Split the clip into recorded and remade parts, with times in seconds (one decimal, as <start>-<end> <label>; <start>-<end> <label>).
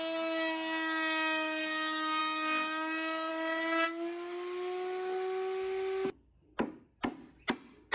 0.0-7.9 recorded